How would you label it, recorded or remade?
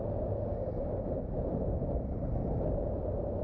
recorded